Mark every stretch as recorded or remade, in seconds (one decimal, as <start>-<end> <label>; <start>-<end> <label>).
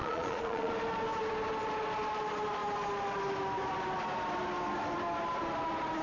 0.0-0.7 remade; 0.7-6.0 recorded